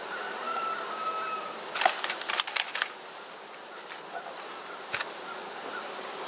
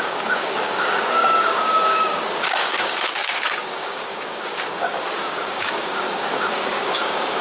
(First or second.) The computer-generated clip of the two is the second